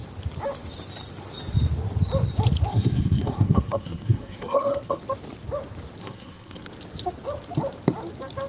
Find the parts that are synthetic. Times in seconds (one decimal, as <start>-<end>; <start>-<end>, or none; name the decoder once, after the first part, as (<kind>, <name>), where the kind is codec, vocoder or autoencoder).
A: 2.7-5.0 (codec, SNAC); 6.0-6.7